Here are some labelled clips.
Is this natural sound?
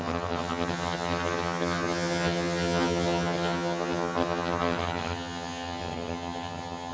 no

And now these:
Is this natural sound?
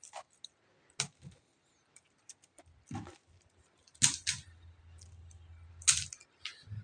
yes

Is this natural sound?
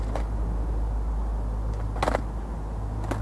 yes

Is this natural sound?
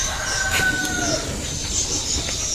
yes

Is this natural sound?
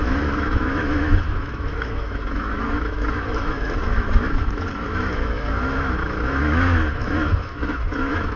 no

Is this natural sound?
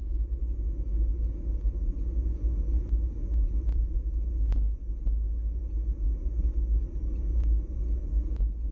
yes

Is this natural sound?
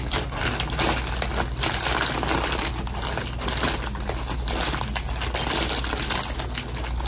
yes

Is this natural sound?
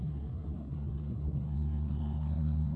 no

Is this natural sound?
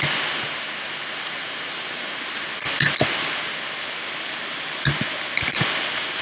yes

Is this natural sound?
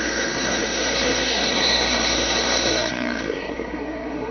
no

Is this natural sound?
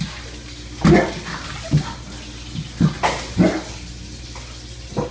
yes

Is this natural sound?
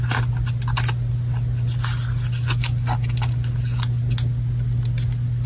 yes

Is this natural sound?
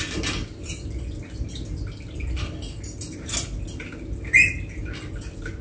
yes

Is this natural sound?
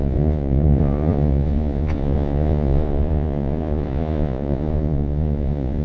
no